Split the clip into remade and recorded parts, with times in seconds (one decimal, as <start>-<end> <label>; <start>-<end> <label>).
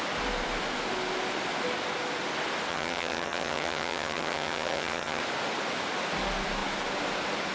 0.0-2.7 recorded; 2.7-5.2 remade; 5.2-7.5 recorded